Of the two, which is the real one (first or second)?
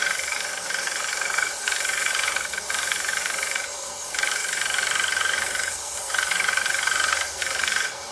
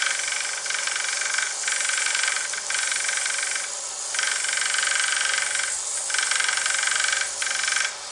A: second